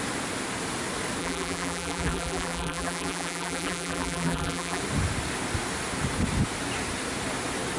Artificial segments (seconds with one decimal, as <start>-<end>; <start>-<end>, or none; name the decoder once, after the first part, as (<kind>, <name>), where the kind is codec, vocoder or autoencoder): 1.2-4.8 (vocoder, BigVGAN v2)